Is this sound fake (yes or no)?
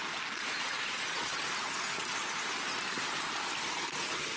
no